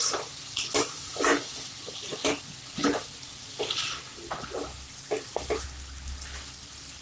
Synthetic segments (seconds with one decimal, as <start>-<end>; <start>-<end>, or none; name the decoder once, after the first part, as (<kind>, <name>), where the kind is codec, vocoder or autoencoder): none